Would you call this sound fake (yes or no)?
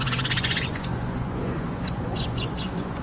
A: yes